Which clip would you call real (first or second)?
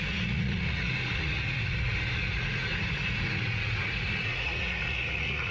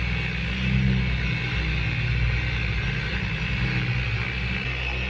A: second